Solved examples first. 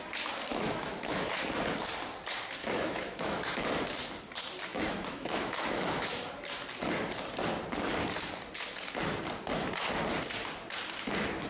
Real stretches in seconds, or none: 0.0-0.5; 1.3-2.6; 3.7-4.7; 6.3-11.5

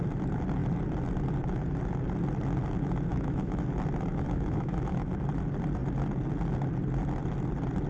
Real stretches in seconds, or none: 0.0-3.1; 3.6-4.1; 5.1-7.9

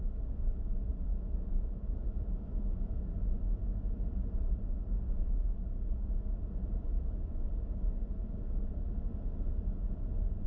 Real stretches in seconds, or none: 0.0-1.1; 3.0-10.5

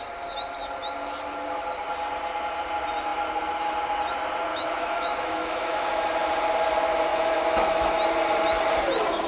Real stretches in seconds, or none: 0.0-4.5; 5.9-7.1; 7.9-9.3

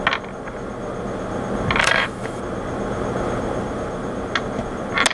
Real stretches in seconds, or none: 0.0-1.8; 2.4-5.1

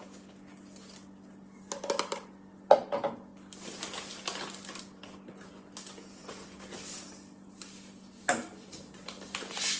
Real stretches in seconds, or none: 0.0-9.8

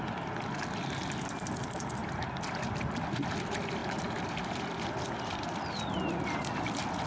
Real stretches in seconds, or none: 0.0-7.1

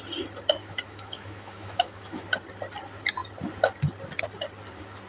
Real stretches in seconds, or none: 0.0-0.6; 2.2-5.1